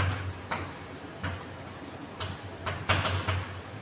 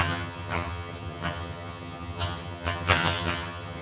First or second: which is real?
first